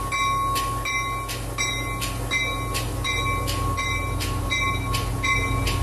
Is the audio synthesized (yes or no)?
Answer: no